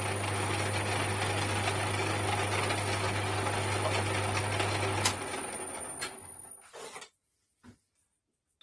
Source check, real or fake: real